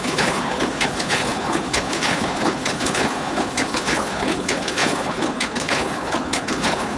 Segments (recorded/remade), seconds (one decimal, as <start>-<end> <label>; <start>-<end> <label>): 0.0-7.0 remade